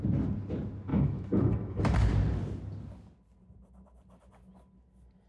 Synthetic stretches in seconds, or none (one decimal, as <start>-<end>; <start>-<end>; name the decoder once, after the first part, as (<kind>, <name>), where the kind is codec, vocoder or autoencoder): 0.9-1.8 (autoencoder, DAC-VAE)